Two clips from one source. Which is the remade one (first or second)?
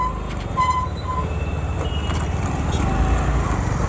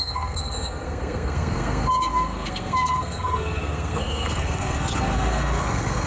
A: second